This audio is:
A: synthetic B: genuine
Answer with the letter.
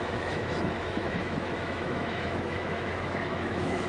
A